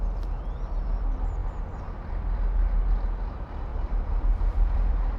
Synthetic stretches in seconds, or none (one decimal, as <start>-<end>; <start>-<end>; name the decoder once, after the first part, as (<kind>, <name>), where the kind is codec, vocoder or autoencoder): 1.4-2.1 (vocoder, BigVGAN v2); 3.7-5.2